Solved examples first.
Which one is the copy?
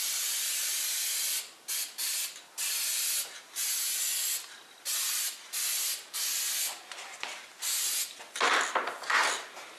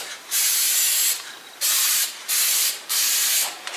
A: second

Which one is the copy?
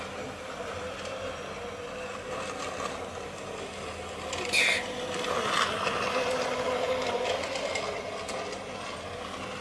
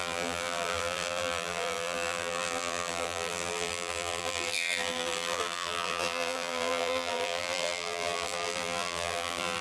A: second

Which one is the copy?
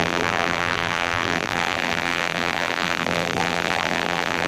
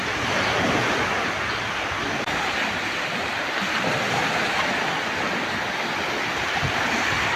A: first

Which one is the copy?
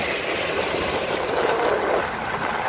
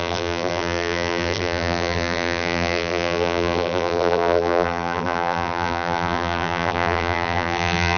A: second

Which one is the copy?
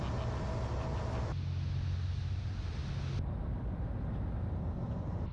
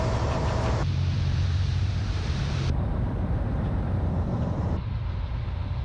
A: second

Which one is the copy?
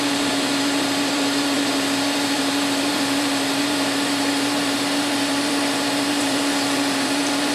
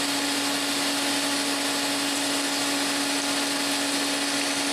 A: first